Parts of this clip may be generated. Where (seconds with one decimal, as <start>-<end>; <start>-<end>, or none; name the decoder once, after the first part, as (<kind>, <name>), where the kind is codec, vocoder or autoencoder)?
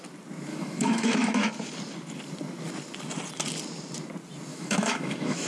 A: 0.5-1.5 (autoencoder, DAC-VAE); 4.5-5.5